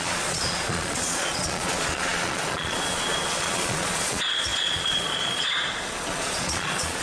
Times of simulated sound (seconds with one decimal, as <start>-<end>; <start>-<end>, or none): 0.0-7.0